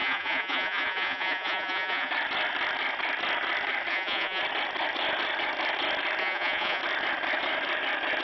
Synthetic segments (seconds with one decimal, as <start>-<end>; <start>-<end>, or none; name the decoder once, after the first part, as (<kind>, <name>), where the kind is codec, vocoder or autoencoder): 0.0-2.1 (vocoder, Vocos); 3.9-4.4; 6.2-6.8